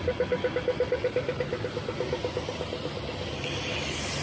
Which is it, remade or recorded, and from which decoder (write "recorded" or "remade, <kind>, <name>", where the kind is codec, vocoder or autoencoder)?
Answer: recorded